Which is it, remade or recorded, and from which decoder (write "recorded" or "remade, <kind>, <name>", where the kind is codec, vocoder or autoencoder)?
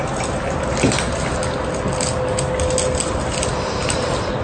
recorded